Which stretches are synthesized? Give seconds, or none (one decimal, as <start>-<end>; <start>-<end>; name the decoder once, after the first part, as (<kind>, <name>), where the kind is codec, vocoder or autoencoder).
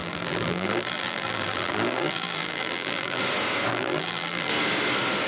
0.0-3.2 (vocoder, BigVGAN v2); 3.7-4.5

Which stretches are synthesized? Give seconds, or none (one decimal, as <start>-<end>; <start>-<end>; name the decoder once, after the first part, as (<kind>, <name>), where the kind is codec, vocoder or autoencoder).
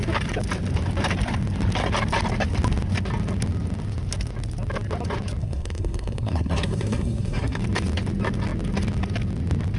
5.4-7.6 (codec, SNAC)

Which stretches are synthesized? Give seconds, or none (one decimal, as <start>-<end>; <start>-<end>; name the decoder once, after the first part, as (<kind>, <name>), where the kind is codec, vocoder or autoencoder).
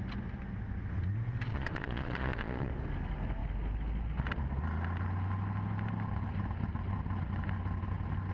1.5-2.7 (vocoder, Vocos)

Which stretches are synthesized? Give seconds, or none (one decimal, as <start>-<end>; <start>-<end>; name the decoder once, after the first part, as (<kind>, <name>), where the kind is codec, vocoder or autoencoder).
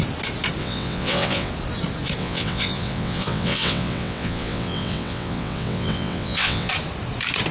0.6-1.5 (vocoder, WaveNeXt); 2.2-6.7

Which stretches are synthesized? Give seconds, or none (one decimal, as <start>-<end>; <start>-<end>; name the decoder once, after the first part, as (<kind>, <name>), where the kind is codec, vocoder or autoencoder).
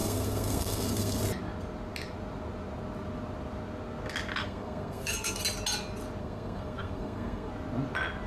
0.0-1.2 (codec, SNAC); 4.4-5.4; 6.2-7.5